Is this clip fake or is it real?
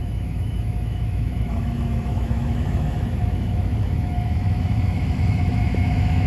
fake